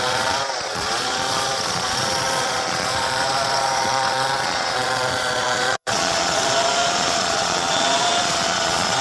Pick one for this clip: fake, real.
fake